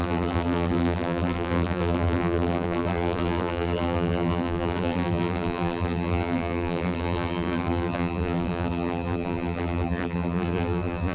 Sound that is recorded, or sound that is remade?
remade